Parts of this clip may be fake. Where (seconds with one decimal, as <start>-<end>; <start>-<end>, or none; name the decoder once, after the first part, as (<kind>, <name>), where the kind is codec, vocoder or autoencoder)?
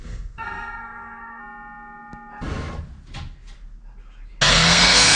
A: 0.0-1.4 (codec, SNAC); 4.5-5.2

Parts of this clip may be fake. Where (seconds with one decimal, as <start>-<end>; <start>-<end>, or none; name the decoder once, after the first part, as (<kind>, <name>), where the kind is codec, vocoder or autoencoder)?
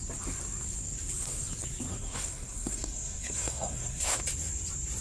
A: 1.9-4.2 (codec, SNAC)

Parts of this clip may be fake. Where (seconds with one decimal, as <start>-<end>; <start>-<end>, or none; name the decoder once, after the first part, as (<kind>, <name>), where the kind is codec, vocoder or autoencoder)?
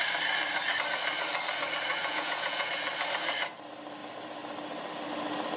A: 1.9-2.8 (vocoder, Vocos)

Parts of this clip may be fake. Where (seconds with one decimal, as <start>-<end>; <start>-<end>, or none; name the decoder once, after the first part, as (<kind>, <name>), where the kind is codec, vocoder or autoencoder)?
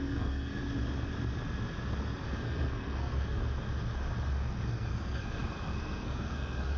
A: 0.0-0.6 (codec, SNAC); 2.3-3.4; 4.6-6.8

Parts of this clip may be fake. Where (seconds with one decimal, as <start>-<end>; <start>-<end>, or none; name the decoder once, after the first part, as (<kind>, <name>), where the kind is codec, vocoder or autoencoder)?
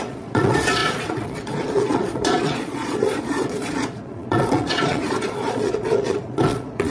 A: 0.0-6.9 (vocoder, Vocos)